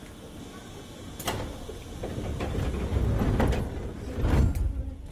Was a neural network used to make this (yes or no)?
no